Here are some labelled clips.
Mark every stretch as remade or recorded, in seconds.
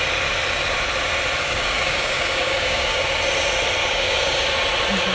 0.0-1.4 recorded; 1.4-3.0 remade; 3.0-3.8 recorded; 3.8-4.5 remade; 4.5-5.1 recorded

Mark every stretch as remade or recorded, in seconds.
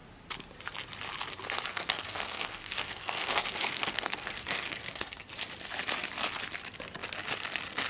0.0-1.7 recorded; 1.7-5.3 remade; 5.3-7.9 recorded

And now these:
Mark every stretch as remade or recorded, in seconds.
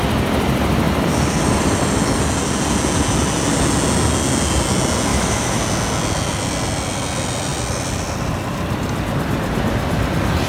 0.0-5.1 recorded; 5.1-5.6 remade; 5.6-10.5 recorded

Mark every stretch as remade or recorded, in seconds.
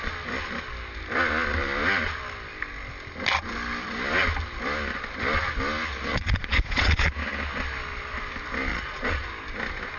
0.0-6.1 recorded; 6.1-7.1 remade; 7.1-8.7 recorded; 8.7-9.3 remade; 9.3-10.0 recorded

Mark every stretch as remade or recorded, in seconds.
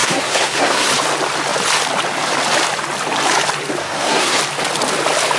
0.0-0.9 remade; 0.9-3.8 recorded; 3.8-4.4 remade; 4.4-5.4 recorded